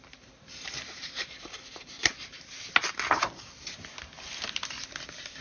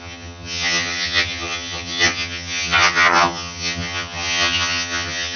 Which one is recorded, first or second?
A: first